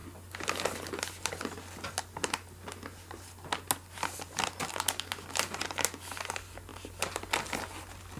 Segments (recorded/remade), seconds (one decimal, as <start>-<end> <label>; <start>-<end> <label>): 0.0-8.2 recorded